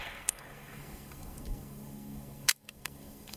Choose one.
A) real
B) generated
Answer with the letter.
B